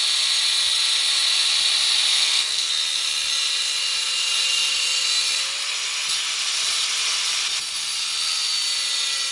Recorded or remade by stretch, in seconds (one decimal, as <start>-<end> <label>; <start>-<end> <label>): 0.0-2.1 recorded; 2.1-2.7 remade; 2.7-9.3 recorded

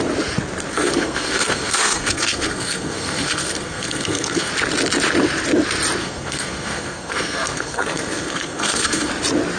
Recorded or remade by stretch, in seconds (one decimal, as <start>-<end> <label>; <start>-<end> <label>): 0.0-0.7 recorded; 0.7-4.5 remade; 4.5-6.0 recorded; 6.0-9.1 remade; 9.1-9.6 recorded

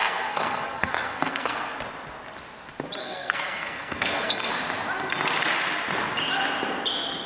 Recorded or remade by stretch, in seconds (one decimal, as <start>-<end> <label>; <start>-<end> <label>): 0.0-1.8 remade; 1.8-3.0 recorded; 3.0-4.5 remade; 4.5-7.3 recorded

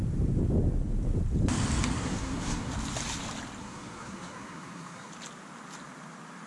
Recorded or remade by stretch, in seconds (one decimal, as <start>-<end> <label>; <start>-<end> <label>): 0.0-2.0 recorded; 2.0-2.7 remade; 2.7-3.6 recorded; 3.6-5.1 remade; 5.1-6.5 recorded